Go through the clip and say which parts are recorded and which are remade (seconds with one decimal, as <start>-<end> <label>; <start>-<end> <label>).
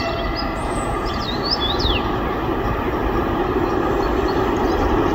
0.0-0.6 recorded; 0.6-1.2 remade; 1.2-5.1 recorded